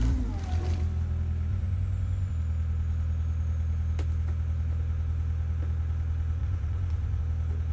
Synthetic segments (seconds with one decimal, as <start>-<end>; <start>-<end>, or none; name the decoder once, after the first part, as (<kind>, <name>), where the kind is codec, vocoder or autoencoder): 1.5-2.3 (vocoder, Vocos); 6.4-7.2